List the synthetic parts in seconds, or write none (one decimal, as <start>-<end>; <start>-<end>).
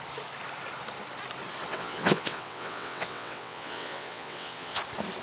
1.7-4.8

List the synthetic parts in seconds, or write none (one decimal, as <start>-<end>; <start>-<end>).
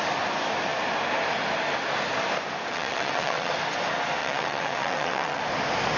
2.7-3.5; 4.2-5.4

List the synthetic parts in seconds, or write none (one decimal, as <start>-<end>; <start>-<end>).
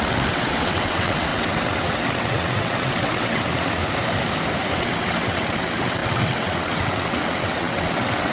0.0-3.8; 4.7-8.3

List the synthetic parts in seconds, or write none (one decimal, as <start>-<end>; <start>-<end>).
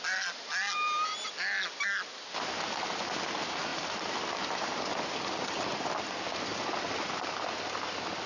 none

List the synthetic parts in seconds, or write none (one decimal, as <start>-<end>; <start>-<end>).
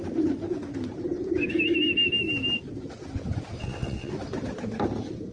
3.6-4.1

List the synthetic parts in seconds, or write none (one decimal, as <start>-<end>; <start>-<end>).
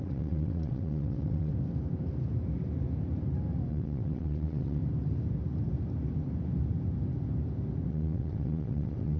0.0-1.5; 3.7-4.8; 7.9-9.2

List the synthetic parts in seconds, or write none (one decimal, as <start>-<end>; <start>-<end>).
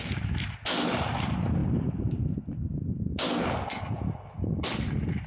none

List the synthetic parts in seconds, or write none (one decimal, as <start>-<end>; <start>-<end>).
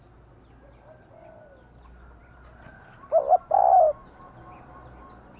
none